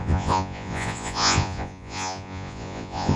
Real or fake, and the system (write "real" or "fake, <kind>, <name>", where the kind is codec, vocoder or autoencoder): fake, vocoder, Vocos